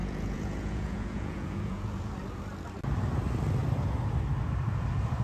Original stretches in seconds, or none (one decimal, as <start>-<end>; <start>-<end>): 2.1-5.2